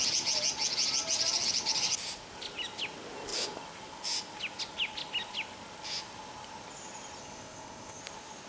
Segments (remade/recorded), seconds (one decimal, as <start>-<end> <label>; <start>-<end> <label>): 0.0-7.2 recorded; 7.2-8.0 remade; 8.0-8.5 recorded